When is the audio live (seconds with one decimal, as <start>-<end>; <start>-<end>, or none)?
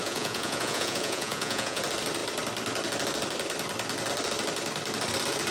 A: 1.8-5.5